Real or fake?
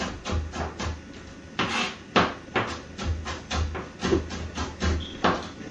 real